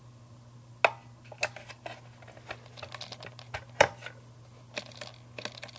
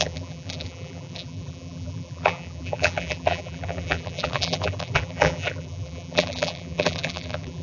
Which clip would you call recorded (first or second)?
first